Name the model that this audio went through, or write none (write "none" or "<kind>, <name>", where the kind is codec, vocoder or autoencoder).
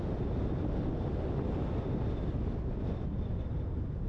none